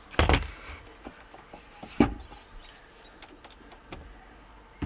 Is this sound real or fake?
real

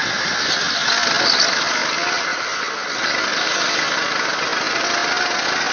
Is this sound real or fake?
real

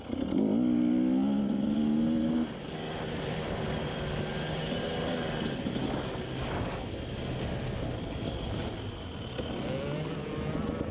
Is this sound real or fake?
real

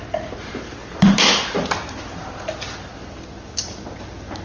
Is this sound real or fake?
real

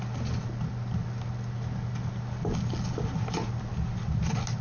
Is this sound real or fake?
real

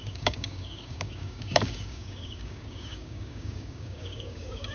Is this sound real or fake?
fake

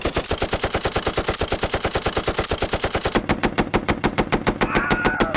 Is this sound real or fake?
real